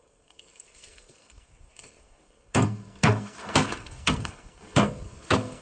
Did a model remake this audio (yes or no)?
yes